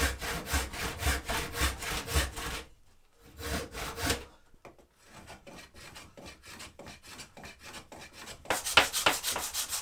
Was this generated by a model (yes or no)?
no